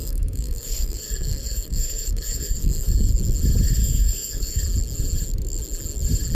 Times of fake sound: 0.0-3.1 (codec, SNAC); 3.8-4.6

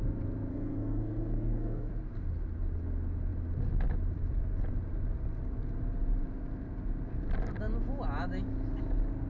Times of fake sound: 0.5-1.9 (codec, SNAC)

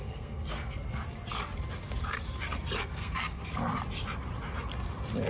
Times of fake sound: 0.0-1.0 (codec, SNAC); 2.8-3.4

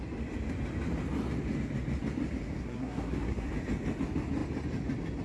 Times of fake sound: 2.6-3.5 (codec, SNAC)